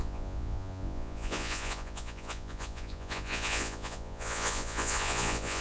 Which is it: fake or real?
fake